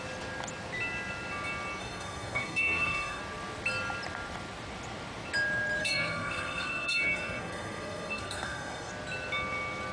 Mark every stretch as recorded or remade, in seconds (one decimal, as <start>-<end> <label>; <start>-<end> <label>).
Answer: 0.0-1.8 recorded; 1.8-3.2 remade; 3.2-5.8 recorded; 5.8-8.9 remade; 8.9-9.9 recorded